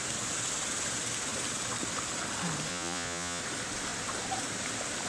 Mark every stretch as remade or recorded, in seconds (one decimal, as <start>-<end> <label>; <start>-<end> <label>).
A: 0.0-2.7 recorded; 2.7-3.4 remade; 3.4-5.1 recorded